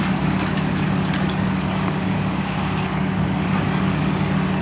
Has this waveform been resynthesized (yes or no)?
yes